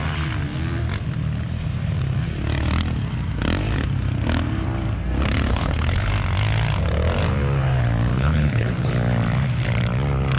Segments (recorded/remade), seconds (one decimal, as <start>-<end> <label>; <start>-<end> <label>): 0.0-5.5 recorded; 5.5-6.1 remade; 6.1-8.1 recorded; 8.1-8.9 remade; 8.9-10.4 recorded